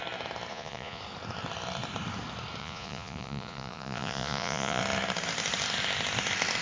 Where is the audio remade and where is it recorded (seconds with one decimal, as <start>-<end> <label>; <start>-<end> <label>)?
0.0-0.5 recorded; 0.5-1.0 remade; 1.0-2.6 recorded; 2.6-4.8 remade; 4.8-6.6 recorded